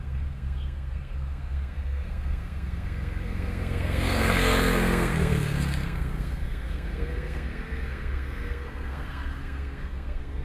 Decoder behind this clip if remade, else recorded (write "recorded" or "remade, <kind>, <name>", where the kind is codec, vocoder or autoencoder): remade, codec, SNAC